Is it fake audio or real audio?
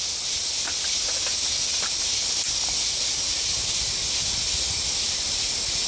real